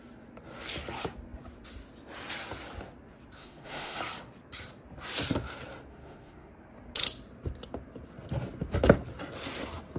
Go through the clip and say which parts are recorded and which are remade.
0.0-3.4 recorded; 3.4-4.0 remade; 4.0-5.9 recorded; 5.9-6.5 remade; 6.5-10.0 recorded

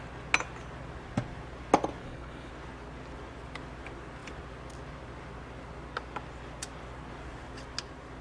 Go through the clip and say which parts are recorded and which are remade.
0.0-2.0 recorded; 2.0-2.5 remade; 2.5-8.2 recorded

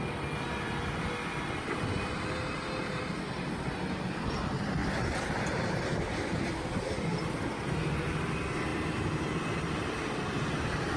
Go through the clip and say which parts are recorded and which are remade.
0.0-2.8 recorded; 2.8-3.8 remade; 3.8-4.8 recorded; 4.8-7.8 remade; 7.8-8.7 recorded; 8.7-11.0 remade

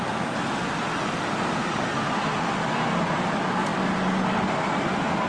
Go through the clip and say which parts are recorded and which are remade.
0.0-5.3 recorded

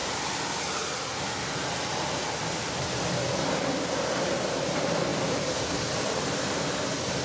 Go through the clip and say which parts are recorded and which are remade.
0.0-5.1 recorded; 5.1-6.8 remade; 6.8-7.2 recorded

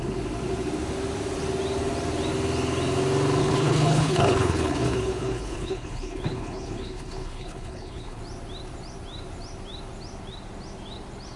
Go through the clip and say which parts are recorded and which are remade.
0.0-3.4 recorded; 3.4-8.2 remade; 8.2-11.4 recorded

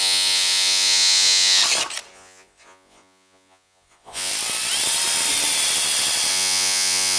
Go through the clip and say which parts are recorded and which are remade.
0.0-1.6 remade; 1.6-2.1 recorded; 2.1-4.3 remade; 4.3-6.3 recorded; 6.3-7.2 remade

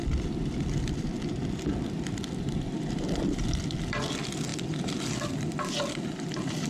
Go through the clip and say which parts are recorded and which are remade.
0.0-4.0 remade; 4.0-4.5 recorded; 4.5-5.1 remade; 5.1-6.7 recorded